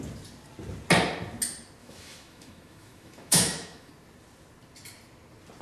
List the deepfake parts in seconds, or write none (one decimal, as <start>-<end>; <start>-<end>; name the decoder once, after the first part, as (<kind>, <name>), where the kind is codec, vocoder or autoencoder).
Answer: 1.8-3.9 (autoencoder, DAC-VAE)